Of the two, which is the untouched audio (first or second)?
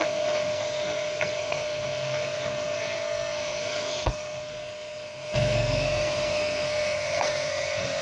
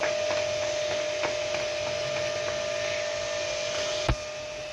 second